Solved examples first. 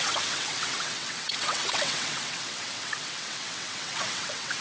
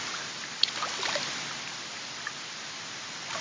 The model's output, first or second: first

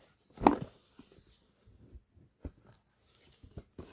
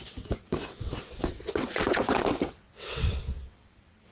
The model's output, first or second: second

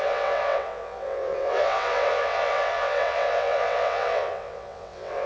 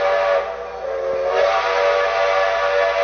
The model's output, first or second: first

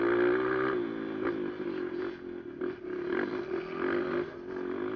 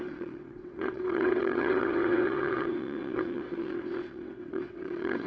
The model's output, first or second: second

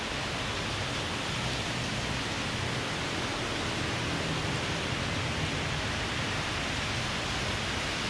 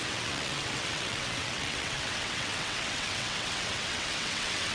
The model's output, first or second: second